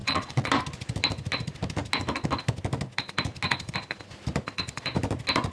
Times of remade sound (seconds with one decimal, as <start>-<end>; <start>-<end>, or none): 0.0-0.5